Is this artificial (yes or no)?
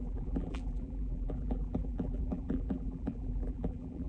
yes